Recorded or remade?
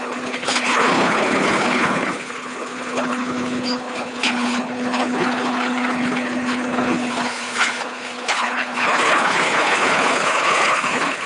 remade